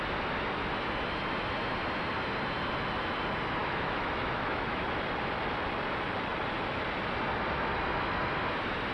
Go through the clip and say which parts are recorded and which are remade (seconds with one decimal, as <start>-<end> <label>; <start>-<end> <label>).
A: 0.0-3.6 recorded; 3.6-4.8 remade; 4.8-8.9 recorded